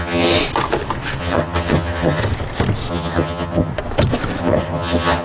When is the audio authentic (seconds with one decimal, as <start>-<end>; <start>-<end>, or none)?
0.4-1.2; 2.2-2.9; 3.7-4.4